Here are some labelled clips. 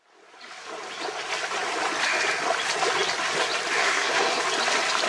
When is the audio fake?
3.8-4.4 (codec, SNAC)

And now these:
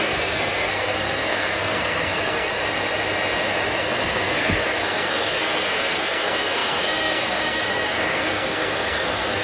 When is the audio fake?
0.0-2.6 (codec, SNAC); 3.8-9.4

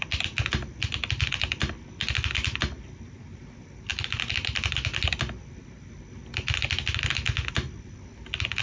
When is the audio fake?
none